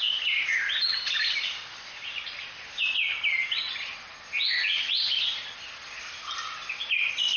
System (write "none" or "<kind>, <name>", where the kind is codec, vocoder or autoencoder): none